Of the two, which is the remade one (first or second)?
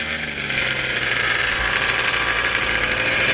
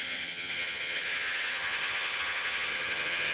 second